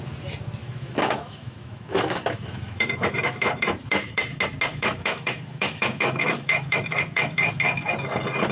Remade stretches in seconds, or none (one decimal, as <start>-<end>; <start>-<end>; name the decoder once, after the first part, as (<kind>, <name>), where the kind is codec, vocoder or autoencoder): 0.6-4.2 (autoencoder, DAC-VAE); 4.7-7.4